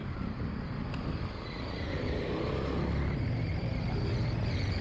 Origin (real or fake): real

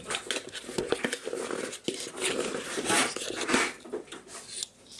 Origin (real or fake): real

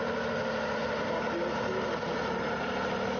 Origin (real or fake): real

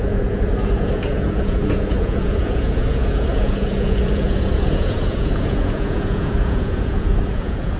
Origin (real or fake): fake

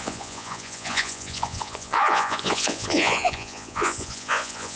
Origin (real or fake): fake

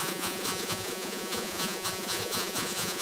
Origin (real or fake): fake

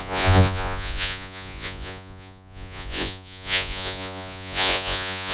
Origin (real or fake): fake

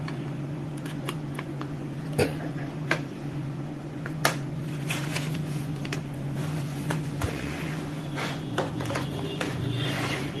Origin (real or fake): fake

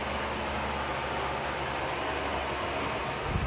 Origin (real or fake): real